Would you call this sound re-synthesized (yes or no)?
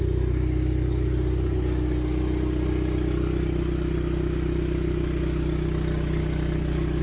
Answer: no